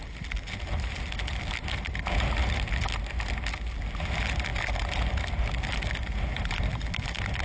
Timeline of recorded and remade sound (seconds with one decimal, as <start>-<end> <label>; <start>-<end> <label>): 0.0-7.4 recorded